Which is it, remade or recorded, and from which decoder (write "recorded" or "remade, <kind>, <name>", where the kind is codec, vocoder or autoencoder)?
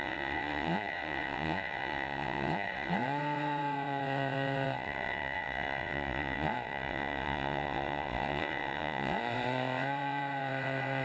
remade, vocoder, WaveNeXt